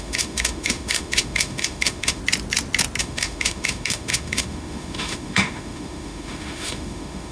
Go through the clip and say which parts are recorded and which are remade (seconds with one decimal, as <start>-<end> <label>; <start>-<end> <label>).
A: 0.0-2.2 remade; 2.2-3.0 recorded; 3.0-7.3 remade